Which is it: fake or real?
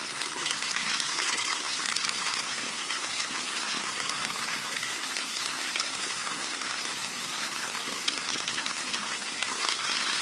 fake